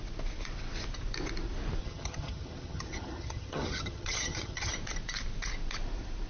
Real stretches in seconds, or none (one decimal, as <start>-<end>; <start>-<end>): 0.0-1.8; 4.7-6.3